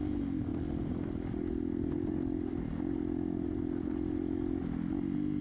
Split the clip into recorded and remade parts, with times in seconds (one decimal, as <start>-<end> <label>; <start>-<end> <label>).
0.0-5.4 recorded